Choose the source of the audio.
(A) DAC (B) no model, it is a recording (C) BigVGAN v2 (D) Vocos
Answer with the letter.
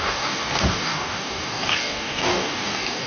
A